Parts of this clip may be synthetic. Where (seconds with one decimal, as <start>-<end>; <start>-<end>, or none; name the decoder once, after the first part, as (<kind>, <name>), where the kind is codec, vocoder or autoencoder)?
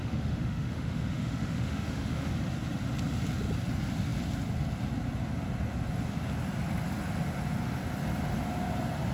0.0-2.3 (autoencoder, DAC-VAE)